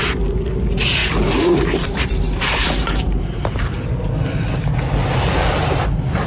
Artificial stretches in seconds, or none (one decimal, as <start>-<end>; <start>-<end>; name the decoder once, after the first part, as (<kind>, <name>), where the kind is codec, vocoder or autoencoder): 1.0-4.4 (vocoder, BigVGAN v2); 5.1-5.8